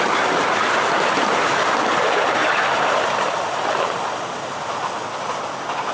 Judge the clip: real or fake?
real